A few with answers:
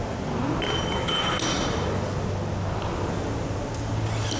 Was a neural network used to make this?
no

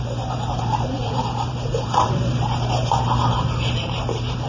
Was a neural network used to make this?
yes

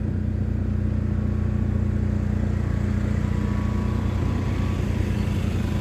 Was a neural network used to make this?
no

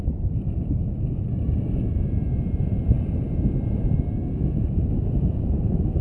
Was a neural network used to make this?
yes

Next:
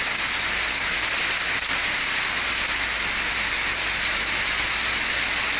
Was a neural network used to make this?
no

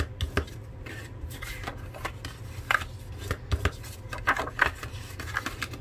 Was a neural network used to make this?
no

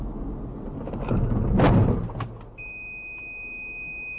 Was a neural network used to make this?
no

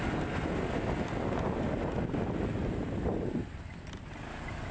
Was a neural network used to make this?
no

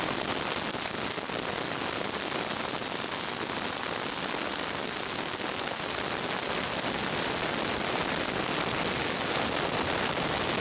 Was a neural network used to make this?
no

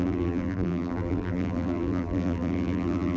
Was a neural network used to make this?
yes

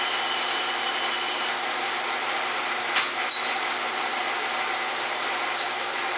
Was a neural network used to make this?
yes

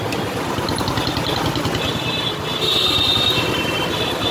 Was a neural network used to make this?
no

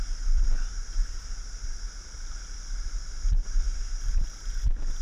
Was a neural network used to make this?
no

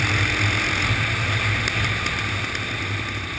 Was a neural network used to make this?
yes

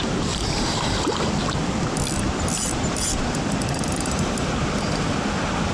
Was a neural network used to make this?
yes